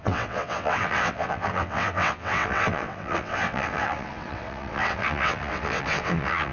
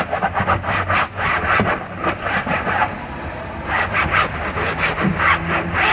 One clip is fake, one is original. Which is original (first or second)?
second